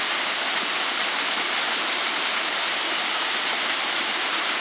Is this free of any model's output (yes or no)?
yes